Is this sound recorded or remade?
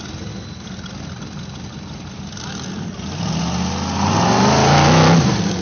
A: recorded